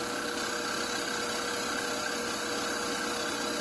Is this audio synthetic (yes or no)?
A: no